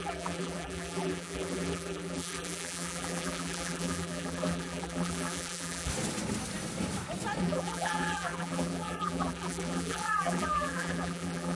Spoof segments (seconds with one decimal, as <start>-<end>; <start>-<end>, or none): 0.0-5.9; 7.4-11.5